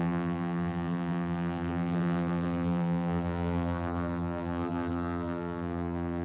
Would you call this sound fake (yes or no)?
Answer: yes